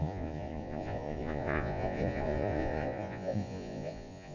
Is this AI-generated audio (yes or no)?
yes